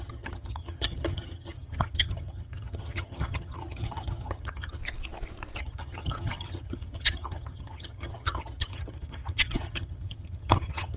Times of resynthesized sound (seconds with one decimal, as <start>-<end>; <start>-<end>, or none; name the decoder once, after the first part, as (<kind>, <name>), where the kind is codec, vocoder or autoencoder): 0.0-4.8 (vocoder, HiFi-GAN); 5.6-11.0